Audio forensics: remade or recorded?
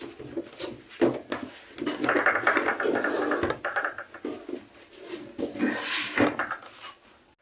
recorded